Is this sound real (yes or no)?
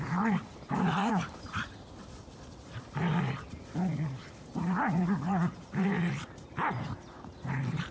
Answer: no